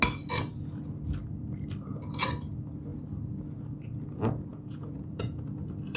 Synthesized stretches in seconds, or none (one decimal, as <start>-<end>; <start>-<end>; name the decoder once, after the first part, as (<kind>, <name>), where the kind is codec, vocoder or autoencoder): 4.5-5.5 (vocoder, Vocos)